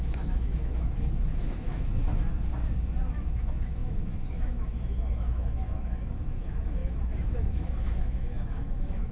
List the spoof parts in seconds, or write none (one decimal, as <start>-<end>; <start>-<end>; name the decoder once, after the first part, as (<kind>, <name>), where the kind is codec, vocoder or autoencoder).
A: 0.0-2.0 (autoencoder, DAC-VAE); 3.0-9.1